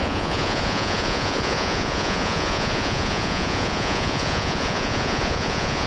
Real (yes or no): no